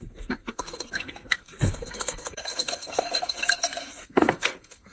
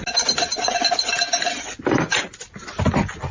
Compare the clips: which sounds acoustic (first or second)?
second